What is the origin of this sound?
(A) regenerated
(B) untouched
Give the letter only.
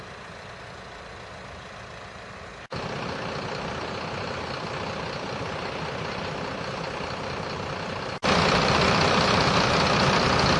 B